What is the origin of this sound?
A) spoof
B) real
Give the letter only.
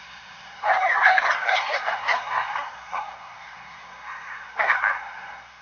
A